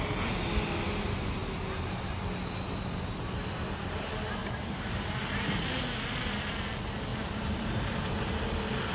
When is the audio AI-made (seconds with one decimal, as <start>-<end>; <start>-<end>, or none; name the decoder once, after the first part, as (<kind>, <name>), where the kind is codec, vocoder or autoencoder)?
4.4-5.2 (vocoder, BigVGAN v2); 7.1-8.3

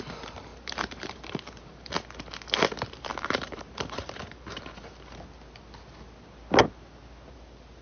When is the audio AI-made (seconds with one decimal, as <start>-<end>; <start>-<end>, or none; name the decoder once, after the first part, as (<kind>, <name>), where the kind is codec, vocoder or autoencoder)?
0.5-1.9 (vocoder, BigVGAN v2); 3.1-4.6

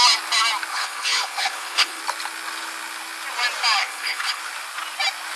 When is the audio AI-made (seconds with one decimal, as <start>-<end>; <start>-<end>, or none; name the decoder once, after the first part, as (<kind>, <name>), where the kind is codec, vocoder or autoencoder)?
0.7-2.0 (codec, HILCodec); 3.8-4.4

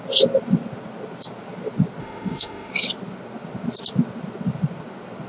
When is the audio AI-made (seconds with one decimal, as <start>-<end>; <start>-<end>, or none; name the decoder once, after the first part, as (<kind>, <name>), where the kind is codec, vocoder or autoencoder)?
2.0-2.7 (autoencoder, DAC-VAE)

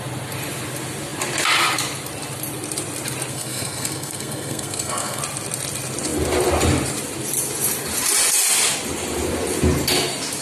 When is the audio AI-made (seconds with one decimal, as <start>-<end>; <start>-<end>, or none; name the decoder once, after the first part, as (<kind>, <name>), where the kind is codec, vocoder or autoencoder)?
3.3-5.2 (codec, SNAC)

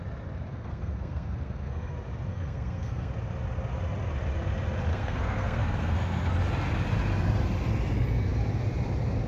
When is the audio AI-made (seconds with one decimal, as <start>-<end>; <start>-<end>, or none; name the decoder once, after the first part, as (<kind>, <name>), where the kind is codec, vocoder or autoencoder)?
0.5-1.9 (codec, SNAC); 2.3-3.1; 4.9-6.3

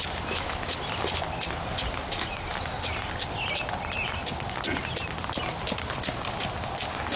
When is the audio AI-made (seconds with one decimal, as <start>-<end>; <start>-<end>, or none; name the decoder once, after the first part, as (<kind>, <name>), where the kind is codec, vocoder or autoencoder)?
none